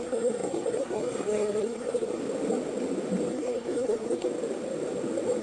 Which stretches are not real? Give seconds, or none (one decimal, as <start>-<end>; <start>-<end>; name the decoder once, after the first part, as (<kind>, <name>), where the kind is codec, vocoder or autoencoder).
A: 0.0-2.2 (codec, SNAC); 3.3-4.3